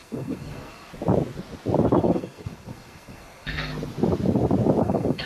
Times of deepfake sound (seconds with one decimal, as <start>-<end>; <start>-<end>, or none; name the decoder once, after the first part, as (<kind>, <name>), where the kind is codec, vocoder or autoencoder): 0.0-0.9 (codec, SNAC); 2.0-3.7; 4.8-5.3